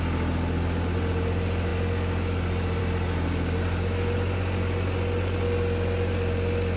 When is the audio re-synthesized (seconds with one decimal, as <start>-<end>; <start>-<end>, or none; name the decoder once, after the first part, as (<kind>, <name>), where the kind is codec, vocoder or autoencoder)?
none